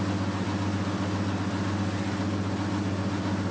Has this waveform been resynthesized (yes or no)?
no